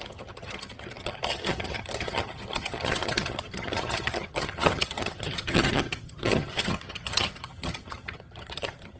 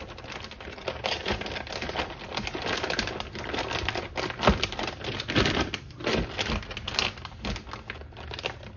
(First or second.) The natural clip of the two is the second